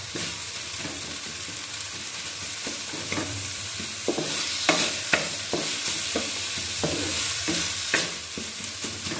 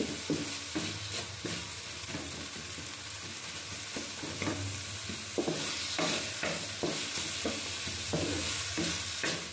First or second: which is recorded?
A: second